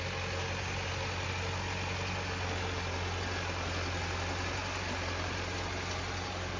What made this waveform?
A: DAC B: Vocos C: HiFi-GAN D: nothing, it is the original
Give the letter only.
D